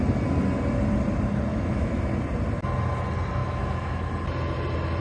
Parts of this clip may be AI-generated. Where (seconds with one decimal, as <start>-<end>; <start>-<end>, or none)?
1.5-2.0; 3.4-4.1